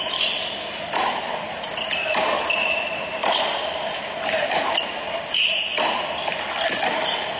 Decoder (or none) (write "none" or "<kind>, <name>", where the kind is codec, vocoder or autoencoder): none